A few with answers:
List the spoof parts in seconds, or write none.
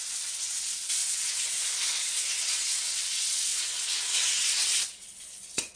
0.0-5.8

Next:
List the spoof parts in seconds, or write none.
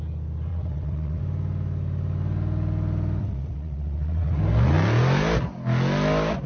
0.5-1.2; 3.2-4.4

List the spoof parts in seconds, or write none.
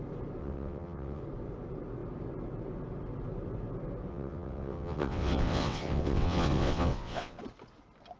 0.4-1.2; 4.1-7.4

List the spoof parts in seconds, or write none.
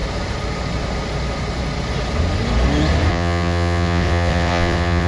3.1-5.1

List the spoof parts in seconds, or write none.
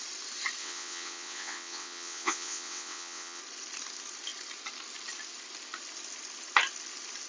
0.6-3.4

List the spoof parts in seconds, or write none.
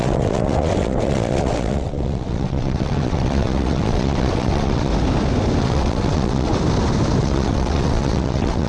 0.0-4.9; 5.6-6.5; 7.2-8.7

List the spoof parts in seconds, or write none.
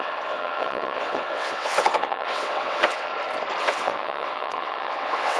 0.0-3.1; 3.6-5.4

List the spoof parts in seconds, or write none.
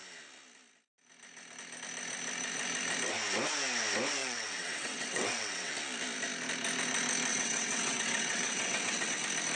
4.2-5.7; 7.3-9.2